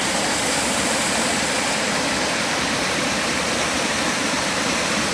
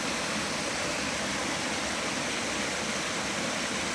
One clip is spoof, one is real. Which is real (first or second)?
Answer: second